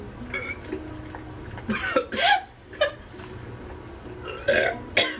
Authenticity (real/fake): real